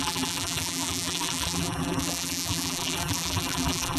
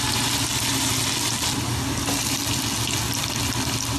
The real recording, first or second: second